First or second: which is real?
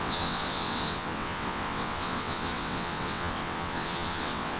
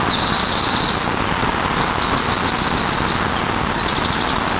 second